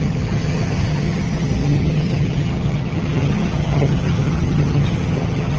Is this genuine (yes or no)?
no